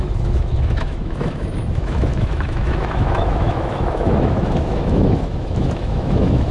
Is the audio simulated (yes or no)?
yes